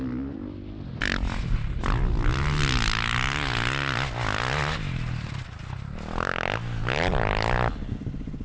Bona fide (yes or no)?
yes